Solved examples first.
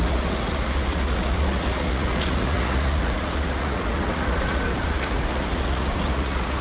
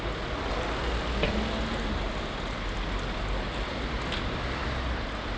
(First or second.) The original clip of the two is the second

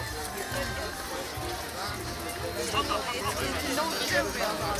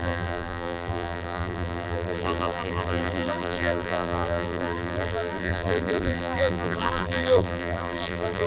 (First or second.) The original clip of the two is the first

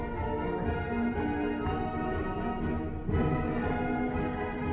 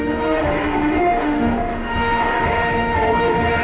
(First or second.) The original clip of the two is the first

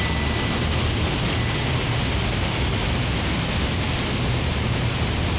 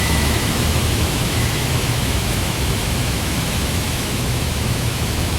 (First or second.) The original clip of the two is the first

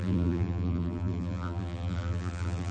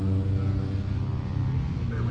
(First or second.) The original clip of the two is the second